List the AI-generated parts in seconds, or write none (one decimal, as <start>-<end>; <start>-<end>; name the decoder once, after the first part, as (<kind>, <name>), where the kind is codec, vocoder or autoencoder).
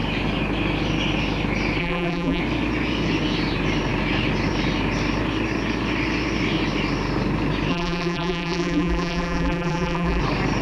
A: 1.8-2.4 (vocoder, BigVGAN v2); 7.7-10.2